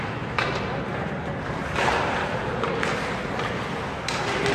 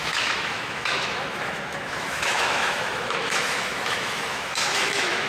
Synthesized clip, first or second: second